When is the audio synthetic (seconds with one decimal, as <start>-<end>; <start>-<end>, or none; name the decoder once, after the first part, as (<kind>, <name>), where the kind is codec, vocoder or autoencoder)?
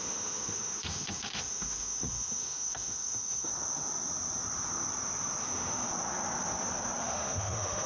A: 0.0-3.5 (autoencoder, DAC-VAE); 5.4-5.9; 7.0-7.9